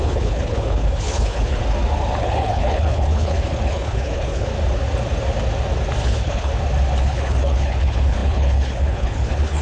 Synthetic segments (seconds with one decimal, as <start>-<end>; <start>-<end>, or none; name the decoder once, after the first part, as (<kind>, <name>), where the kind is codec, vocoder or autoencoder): 0.0-1.6 (codec, HILCodec); 2.2-4.5; 6.0-6.5; 7.0-9.6